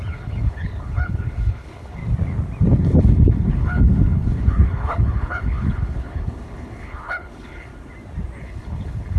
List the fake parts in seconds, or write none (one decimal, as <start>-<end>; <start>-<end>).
0.0-2.0; 2.6-7.7; 8.4-9.2